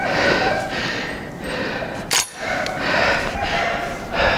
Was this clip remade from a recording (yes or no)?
no